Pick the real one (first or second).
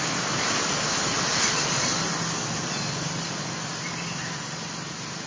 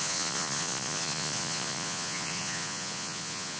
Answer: first